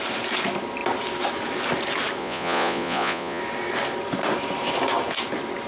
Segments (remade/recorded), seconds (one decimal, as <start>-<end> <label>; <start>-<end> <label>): 0.0-2.2 recorded; 2.2-3.4 remade; 3.4-5.7 recorded